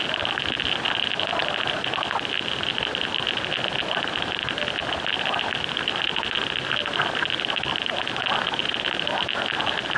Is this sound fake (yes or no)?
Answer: no